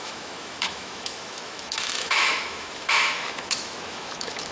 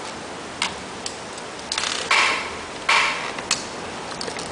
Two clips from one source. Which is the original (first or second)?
second